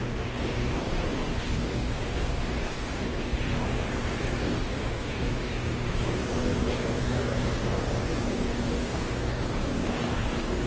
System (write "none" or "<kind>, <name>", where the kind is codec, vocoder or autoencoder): codec, DAC